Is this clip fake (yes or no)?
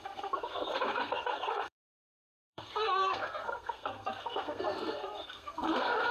yes